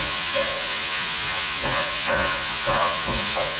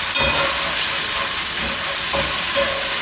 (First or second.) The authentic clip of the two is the second